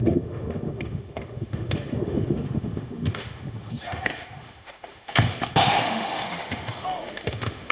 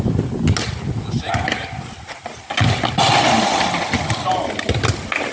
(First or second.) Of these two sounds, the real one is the second